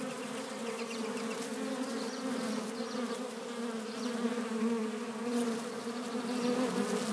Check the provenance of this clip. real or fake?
real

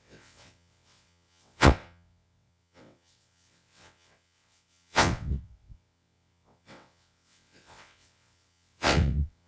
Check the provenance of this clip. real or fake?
fake